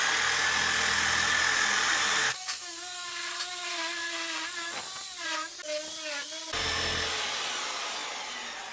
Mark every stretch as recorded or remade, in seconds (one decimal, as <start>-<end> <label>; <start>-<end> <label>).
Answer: 0.0-2.2 recorded; 2.2-3.1 remade; 3.1-8.7 recorded